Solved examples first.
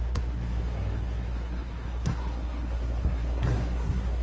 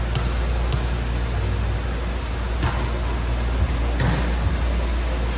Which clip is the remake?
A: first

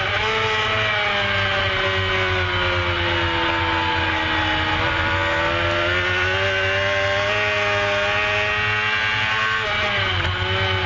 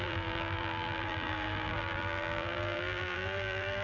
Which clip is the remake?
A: second